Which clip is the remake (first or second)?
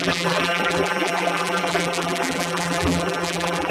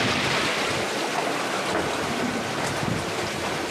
first